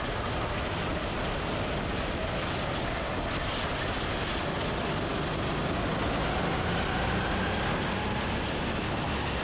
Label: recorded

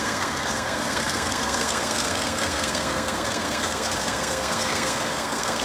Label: remade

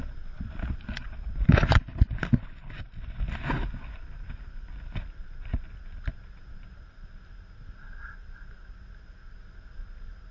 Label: recorded